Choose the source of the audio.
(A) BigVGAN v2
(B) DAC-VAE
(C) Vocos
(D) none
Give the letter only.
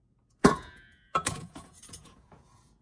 C